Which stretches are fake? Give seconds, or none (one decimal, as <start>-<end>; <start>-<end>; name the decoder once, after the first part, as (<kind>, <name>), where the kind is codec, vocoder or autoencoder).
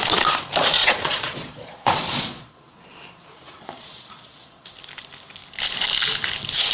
0.8-4.7 (vocoder, Vocos)